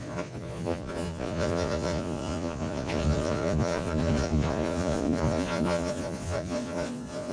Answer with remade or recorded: remade